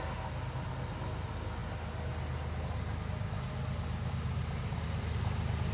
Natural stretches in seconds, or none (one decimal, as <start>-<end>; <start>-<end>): 0.0-5.7